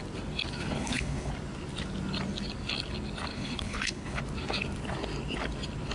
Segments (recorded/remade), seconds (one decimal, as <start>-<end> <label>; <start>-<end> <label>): 0.0-0.6 recorded; 0.6-1.3 remade; 1.3-3.3 recorded; 3.3-4.2 remade; 4.2-5.9 recorded